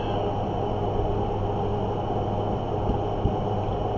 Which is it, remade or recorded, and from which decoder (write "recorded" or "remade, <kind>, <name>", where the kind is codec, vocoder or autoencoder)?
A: recorded